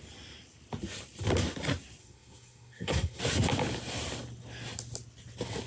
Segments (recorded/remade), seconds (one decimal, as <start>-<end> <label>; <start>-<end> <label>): 0.0-2.0 recorded; 2.0-3.2 remade; 3.2-5.7 recorded